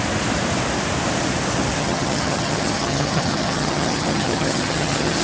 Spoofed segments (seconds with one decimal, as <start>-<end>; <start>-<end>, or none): 1.8-5.2